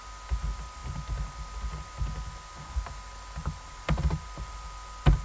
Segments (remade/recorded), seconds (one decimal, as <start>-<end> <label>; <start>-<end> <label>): 0.0-3.4 recorded; 3.4-4.0 remade; 4.0-5.2 recorded

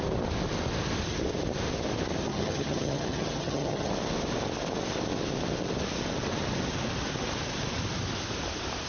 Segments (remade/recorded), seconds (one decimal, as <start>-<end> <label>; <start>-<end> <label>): 0.0-2.3 recorded; 2.3-3.9 remade; 3.9-8.9 recorded

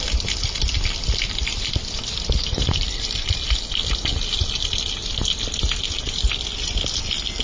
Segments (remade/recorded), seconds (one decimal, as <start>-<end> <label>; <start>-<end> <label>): 0.0-2.5 recorded; 2.5-3.2 remade; 3.2-7.4 recorded

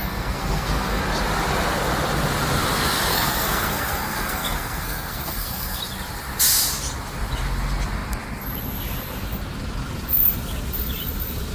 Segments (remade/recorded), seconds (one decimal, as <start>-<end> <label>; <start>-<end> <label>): 0.0-1.0 remade; 1.0-3.1 recorded; 3.1-5.8 remade; 5.8-11.5 recorded

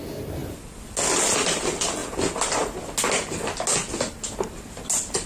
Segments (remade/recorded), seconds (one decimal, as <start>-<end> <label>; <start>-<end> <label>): 0.0-5.3 recorded

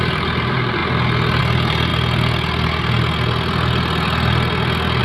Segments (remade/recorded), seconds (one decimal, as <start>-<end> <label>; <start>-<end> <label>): 0.0-0.8 remade; 0.8-1.4 recorded; 1.4-1.9 remade; 1.9-5.0 recorded

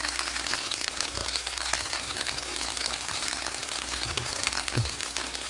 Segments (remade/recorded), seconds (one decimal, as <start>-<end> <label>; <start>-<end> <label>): 0.0-5.5 remade

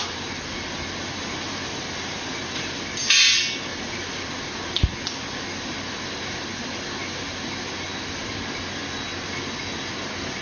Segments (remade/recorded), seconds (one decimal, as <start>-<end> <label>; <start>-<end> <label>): 0.0-10.4 recorded